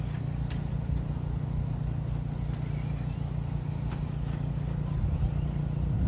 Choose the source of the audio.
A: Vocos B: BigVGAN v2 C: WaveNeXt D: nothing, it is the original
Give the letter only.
D